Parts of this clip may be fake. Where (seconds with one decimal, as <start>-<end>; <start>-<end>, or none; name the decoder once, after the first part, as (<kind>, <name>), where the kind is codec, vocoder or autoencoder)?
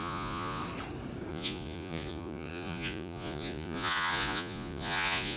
0.0-0.6 (vocoder, Vocos); 1.3-5.4